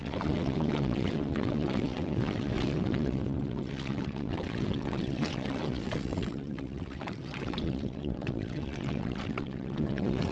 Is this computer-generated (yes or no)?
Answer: yes